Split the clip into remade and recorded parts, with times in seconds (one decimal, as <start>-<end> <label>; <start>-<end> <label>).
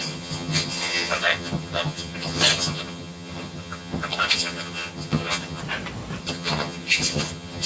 0.0-5.6 remade; 5.6-6.2 recorded; 6.2-7.7 remade